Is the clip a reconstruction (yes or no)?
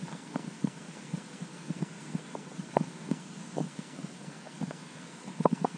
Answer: yes